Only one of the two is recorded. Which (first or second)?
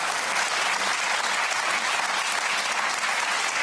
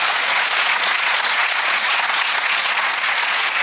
first